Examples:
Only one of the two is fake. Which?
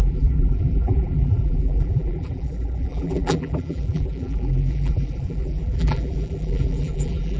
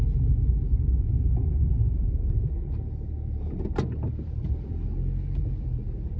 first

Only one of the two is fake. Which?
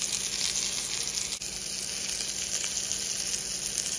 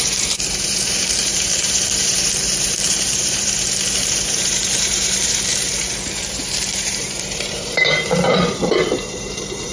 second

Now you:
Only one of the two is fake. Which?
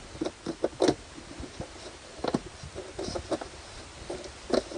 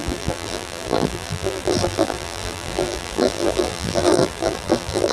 second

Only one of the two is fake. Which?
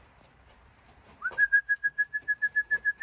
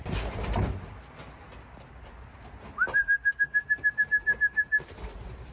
first